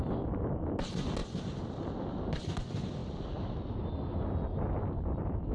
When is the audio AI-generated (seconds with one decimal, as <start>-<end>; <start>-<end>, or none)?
1.2-1.8